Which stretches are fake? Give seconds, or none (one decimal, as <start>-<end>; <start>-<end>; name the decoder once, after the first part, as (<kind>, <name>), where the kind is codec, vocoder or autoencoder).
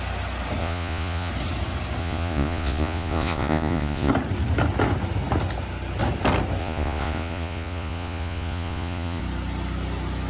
0.6-1.3 (vocoder, Vocos); 2.0-4.1; 6.6-9.2